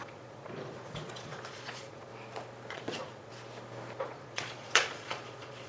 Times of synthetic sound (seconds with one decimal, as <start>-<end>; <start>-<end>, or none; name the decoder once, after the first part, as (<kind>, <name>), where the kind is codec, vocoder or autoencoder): 0.0-2.1 (vocoder, Vocos); 2.7-3.3; 4.0-5.7